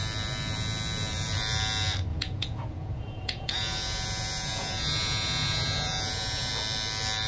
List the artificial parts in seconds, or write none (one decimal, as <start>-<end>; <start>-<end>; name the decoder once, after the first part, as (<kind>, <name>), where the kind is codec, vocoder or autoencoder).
2.1-6.5 (vocoder, Vocos)